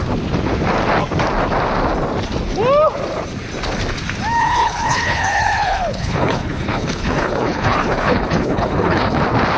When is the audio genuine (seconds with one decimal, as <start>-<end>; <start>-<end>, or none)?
0.0-4.4; 9.2-9.6